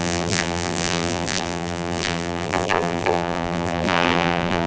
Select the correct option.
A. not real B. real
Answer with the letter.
A